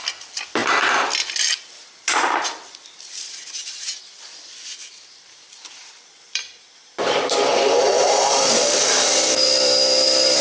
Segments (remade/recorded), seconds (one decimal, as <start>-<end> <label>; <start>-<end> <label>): 0.0-7.5 remade; 7.5-8.0 recorded; 8.0-10.4 remade